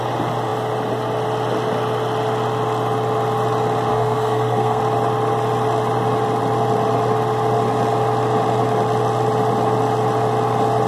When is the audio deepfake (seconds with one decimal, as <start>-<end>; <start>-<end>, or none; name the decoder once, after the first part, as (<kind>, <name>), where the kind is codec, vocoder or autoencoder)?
3.9-4.8 (codec, SNAC)